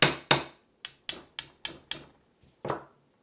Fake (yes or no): no